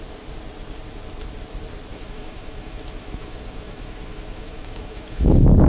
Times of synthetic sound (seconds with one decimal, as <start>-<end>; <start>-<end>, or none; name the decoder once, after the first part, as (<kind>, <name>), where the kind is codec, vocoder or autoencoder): 1.9-5.3 (autoencoder, DAC-VAE)